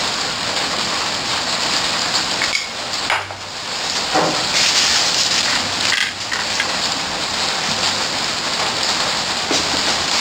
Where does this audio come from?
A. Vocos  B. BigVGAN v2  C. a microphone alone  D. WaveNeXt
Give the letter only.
C